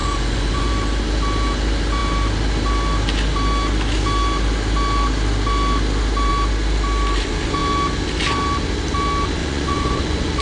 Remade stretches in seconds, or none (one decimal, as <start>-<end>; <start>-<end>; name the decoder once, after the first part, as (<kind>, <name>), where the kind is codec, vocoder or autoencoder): 0.0-0.7 (vocoder, Vocos); 9.4-10.4